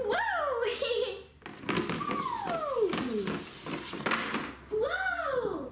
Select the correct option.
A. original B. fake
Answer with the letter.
A